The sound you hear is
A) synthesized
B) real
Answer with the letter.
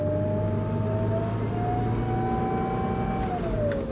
B